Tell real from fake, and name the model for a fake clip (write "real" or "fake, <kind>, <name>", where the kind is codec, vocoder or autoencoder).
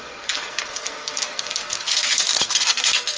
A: fake, codec, SNAC